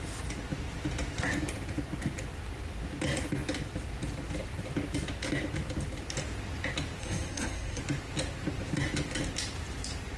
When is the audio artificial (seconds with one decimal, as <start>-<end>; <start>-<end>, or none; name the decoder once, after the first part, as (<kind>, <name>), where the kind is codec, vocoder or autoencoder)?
7.0-7.8 (codec, SNAC)